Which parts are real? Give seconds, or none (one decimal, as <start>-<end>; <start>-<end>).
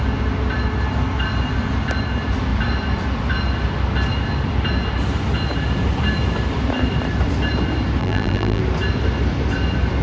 0.0-8.0; 8.6-10.0